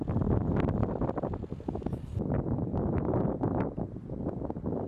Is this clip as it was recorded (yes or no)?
yes